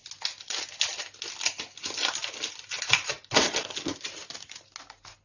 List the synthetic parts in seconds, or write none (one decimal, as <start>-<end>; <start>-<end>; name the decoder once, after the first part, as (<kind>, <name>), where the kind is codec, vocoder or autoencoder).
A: none

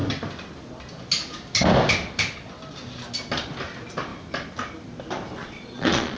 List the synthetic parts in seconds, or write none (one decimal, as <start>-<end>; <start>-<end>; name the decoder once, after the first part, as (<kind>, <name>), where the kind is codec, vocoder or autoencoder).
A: 5.4-6.2 (vocoder, Vocos)

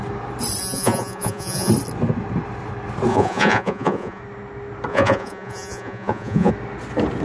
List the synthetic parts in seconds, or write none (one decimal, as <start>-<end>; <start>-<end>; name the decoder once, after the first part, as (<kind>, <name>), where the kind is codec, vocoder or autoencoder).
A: 0.6-1.7 (vocoder, Vocos); 3.1-4.2; 4.9-6.5